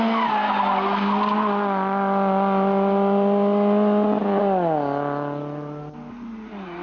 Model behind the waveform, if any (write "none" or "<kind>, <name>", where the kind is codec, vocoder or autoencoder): none